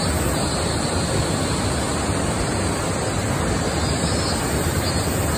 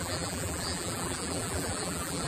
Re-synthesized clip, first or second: second